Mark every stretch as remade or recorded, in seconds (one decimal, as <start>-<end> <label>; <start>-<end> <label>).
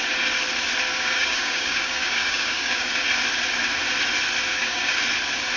0.0-0.9 recorded; 0.9-2.9 remade; 2.9-4.5 recorded; 4.5-5.0 remade; 5.0-5.6 recorded